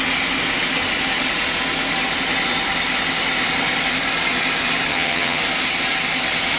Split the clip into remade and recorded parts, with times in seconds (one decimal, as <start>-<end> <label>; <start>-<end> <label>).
0.0-4.9 recorded; 4.9-5.4 remade; 5.4-6.6 recorded